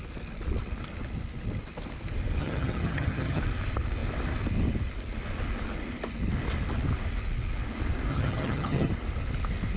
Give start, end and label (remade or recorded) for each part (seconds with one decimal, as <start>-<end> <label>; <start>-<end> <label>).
0.0-2.4 recorded; 2.4-3.4 remade; 3.4-8.1 recorded; 8.1-8.9 remade; 8.9-9.8 recorded